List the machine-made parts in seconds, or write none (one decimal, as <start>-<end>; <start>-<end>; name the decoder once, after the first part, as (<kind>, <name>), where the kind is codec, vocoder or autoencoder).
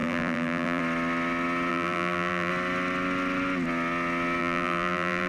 0.0-0.8 (vocoder, BigVGAN v2); 1.7-2.5; 4.4-5.3